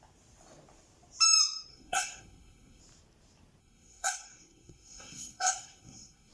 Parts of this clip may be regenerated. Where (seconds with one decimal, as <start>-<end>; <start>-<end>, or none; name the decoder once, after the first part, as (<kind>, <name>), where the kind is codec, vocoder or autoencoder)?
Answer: 1.7-2.8 (codec, SNAC); 3.6-6.3